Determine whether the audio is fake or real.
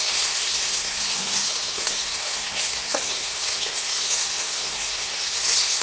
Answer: fake